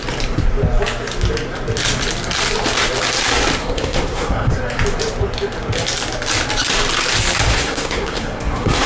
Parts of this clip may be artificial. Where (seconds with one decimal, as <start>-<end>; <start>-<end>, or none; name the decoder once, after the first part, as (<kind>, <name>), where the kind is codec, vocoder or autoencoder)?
3.6-4.5 (codec, SNAC); 7.5-8.9